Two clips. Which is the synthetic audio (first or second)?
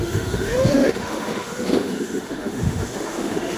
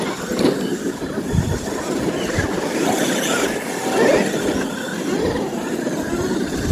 first